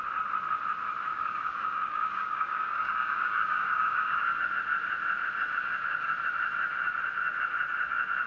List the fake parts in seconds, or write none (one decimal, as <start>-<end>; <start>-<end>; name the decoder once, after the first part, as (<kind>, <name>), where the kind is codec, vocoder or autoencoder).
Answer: 1.1-4.4 (codec, DAC); 5.6-6.1